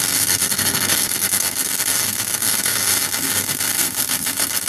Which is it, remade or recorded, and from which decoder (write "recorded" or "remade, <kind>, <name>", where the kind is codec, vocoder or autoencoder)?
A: remade, codec, SNAC